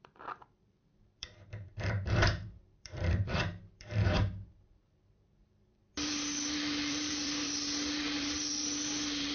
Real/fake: fake